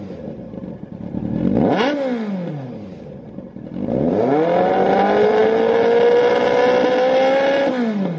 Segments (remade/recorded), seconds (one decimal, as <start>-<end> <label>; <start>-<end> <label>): 0.0-8.2 recorded